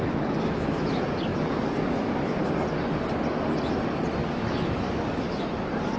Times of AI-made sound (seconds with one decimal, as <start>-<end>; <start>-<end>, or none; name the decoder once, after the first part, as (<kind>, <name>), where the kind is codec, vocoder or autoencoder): 0.0-0.9 (autoencoder, DAC-VAE); 1.3-2.5; 4.2-5.4